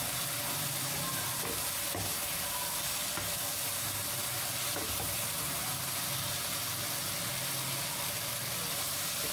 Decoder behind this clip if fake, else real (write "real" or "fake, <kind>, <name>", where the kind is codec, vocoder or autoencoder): real